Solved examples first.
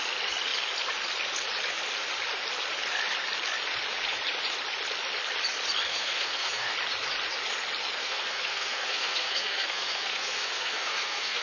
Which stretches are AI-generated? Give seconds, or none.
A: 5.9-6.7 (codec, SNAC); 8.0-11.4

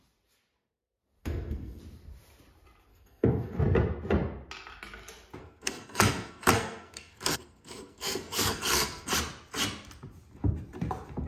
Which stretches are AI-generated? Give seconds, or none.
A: 1.2-1.8 (codec, SNAC); 2.9-3.6; 5.4-9.1

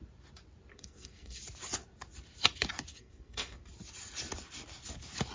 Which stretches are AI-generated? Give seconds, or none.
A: 0.7-1.4 (codec, SNAC); 2.9-3.6

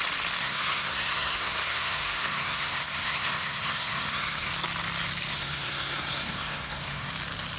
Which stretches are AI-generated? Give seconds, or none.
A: 0.4-4.5 (codec, SNAC); 5.3-7.1

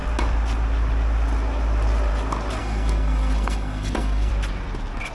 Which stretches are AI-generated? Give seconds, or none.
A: 2.6-4.3 (codec, SNAC)

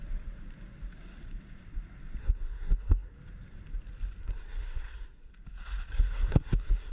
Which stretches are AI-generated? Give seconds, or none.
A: 2.2-3.1 (codec, SNAC); 4.2-5.3; 5.9-6.9